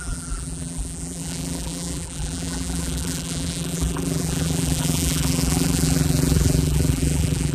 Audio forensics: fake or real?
fake